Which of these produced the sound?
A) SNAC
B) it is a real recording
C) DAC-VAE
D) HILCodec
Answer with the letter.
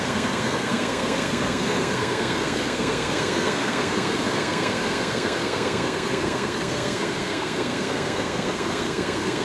A